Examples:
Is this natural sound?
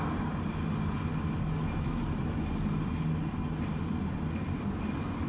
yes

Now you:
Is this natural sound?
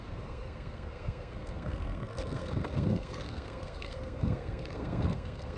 no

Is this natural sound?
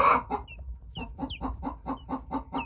yes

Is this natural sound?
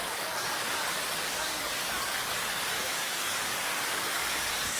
no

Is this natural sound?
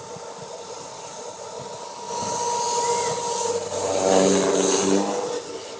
yes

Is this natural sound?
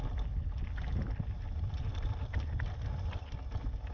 yes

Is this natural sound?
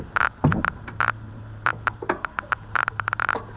no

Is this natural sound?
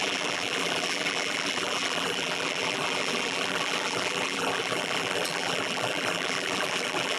no